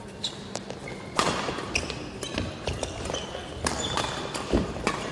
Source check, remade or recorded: recorded